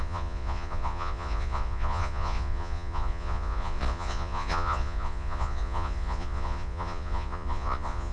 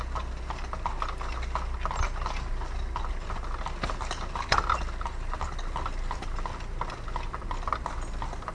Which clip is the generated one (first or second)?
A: first